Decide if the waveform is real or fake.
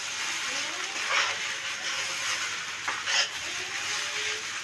real